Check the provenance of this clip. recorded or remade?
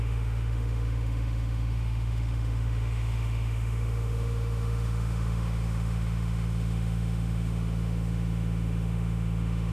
remade